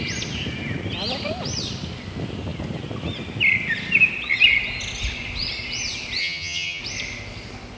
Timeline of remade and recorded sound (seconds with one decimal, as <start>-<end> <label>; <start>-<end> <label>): 0.0-6.2 recorded; 6.2-6.8 remade; 6.8-7.8 recorded